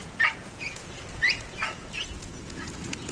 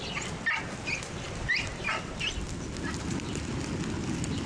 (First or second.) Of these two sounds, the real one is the second